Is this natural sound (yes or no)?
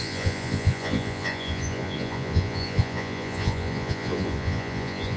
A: no